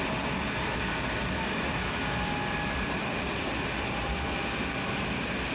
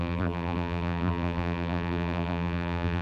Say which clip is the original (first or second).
first